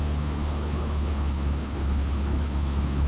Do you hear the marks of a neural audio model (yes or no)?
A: yes